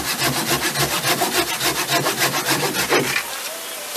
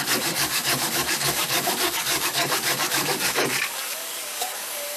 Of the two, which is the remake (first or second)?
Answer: second